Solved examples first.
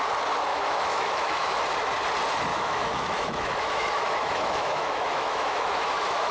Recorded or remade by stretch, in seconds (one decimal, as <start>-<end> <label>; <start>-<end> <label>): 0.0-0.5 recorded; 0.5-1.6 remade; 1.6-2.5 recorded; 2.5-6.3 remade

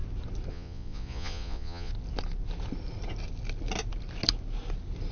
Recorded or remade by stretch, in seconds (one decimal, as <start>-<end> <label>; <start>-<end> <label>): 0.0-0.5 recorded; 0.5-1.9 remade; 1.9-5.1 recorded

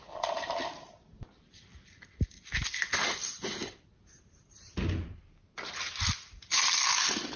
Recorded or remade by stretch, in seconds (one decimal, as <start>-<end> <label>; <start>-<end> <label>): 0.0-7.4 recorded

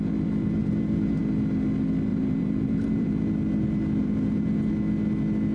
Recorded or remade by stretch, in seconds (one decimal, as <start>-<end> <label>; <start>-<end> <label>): 0.0-0.6 recorded; 0.6-1.2 remade; 1.2-2.1 recorded; 2.1-3.2 remade; 3.2-4.0 recorded; 4.0-4.7 remade; 4.7-5.5 recorded

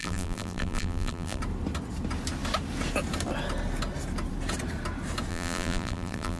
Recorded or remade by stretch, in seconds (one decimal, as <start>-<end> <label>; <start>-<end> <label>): 0.0-1.4 remade; 1.4-5.3 recorded; 5.3-6.4 remade

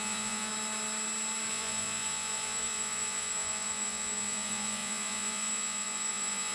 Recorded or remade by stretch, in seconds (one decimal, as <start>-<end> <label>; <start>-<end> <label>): 0.0-0.5 remade; 0.5-1.5 recorded; 1.5-6.5 remade

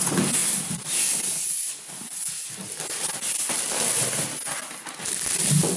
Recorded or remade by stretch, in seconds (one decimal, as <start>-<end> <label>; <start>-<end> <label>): 0.0-0.4 recorded; 0.4-3.9 remade; 3.9-5.8 recorded

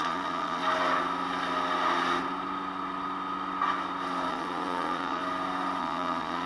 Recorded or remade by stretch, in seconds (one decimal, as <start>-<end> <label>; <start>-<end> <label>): 0.0-0.6 remade; 0.6-4.3 recorded; 4.3-5.2 remade; 5.2-5.8 recorded; 5.8-6.5 remade